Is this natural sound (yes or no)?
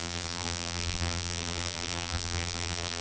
no